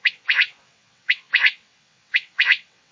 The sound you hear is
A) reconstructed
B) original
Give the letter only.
A